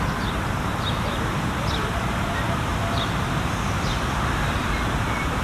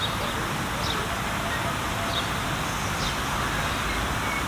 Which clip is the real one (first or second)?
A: second